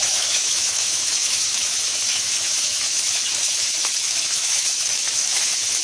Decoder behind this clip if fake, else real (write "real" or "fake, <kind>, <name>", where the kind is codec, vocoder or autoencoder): fake, autoencoder, DAC-VAE